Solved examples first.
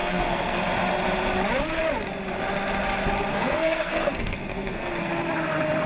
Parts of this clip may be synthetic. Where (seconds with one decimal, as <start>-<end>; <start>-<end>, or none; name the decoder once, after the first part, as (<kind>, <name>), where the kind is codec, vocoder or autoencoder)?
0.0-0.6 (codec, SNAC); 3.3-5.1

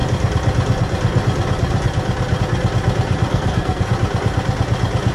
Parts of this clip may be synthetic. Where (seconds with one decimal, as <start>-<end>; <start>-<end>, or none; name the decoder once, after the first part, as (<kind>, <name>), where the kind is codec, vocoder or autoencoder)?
3.3-3.9 (codec, SNAC)

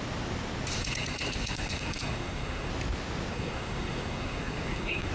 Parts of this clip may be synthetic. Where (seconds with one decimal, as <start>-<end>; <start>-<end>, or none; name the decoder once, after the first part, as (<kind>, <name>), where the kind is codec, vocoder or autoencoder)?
0.8-2.7 (codec, SNAC); 3.3-5.1

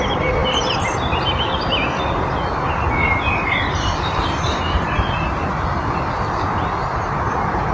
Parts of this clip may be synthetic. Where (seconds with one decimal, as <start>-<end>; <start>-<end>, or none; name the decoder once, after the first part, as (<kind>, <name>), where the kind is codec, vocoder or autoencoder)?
none

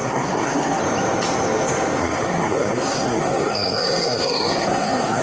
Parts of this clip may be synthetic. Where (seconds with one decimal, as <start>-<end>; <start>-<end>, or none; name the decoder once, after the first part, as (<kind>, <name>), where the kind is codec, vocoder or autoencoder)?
0.0-0.8 (codec, SNAC); 2.0-5.2

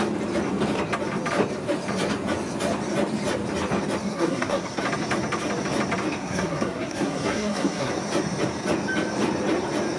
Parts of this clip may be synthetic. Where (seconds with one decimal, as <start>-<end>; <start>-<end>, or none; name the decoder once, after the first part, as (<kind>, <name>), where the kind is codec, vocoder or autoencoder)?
4.0-4.8 (codec, SNAC); 6.2-7.9